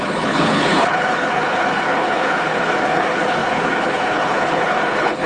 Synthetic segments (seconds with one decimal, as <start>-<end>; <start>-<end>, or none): 0.0-5.3